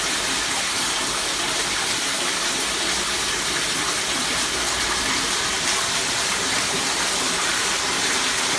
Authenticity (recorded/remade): recorded